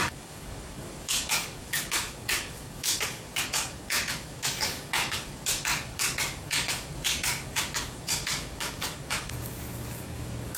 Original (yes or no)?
no